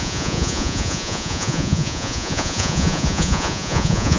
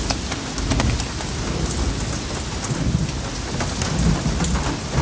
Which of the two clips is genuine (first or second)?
second